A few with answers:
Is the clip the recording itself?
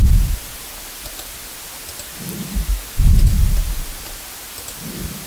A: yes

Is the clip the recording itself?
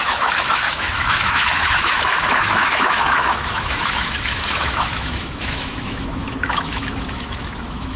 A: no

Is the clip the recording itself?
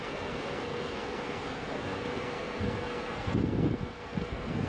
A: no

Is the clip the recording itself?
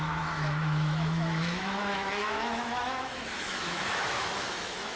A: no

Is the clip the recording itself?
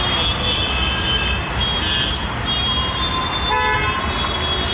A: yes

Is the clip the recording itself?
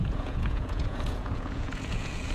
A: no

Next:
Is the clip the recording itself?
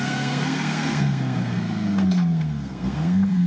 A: no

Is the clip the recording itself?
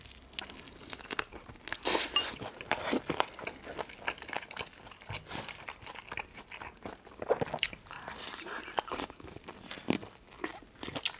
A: yes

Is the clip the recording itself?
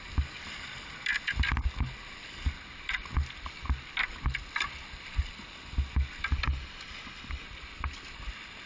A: yes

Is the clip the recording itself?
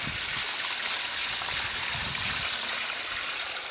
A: yes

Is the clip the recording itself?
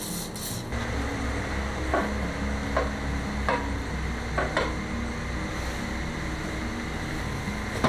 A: yes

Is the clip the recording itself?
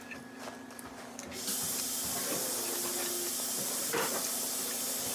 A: yes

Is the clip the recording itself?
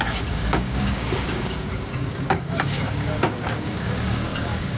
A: no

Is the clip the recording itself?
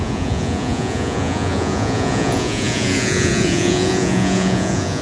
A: no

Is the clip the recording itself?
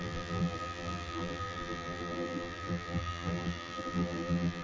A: no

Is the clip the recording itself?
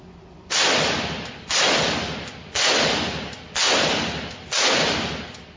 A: yes